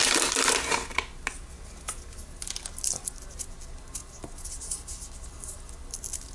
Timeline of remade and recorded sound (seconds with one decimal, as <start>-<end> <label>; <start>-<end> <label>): 0.0-6.3 recorded